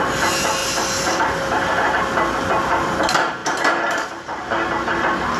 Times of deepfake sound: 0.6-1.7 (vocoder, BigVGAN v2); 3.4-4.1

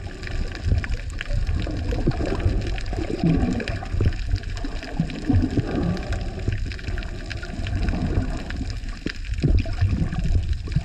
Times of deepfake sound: none

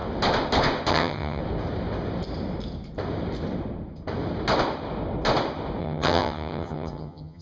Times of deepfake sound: 0.9-1.4 (vocoder, HiFi-GAN); 5.8-7.4

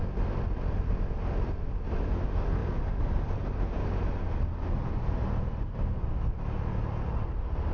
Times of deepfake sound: 2.6-4.3 (vocoder, BigVGAN v2)

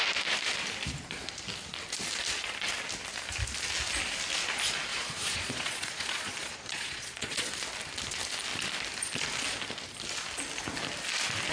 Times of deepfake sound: 4.9-7.5 (vocoder, Vocos)